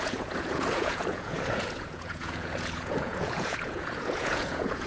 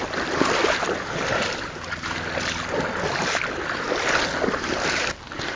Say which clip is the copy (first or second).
first